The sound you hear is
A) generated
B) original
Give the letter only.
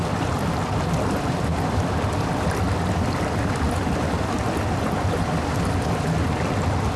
B